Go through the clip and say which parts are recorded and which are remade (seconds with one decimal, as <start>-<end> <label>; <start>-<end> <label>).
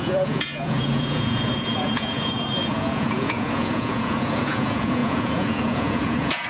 0.0-6.5 remade